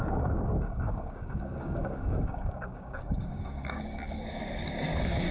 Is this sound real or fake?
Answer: fake